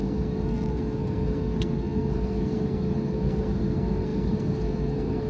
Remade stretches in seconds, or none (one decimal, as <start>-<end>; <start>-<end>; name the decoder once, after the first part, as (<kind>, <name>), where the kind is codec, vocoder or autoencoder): 0.0-5.3 (codec, SNAC)